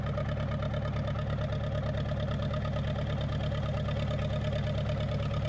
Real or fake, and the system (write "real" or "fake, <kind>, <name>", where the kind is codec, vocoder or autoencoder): real